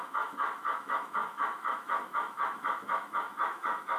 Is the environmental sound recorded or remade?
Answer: remade